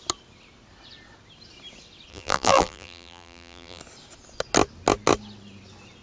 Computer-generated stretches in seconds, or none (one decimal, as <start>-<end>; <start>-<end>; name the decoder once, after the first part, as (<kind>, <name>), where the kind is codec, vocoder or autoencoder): 2.1-3.8 (vocoder, BigVGAN v2)